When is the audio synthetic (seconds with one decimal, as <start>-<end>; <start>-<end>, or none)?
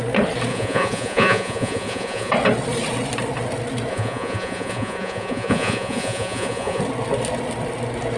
0.5-2.3; 3.9-6.8